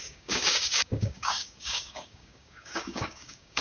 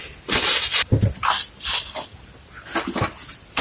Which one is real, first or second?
second